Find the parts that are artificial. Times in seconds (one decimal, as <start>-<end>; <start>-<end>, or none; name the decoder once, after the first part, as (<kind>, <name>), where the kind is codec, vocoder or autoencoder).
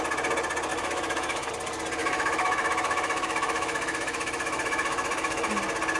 0.7-1.5 (autoencoder, DAC-VAE); 2.0-5.6